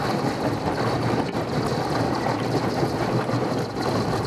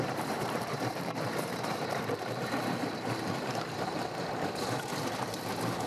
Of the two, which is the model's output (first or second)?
second